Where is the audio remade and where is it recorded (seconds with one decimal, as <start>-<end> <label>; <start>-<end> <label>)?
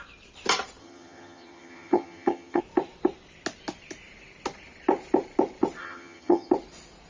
0.0-0.8 recorded; 0.8-2.6 remade; 2.6-5.8 recorded; 5.8-6.5 remade; 6.5-7.1 recorded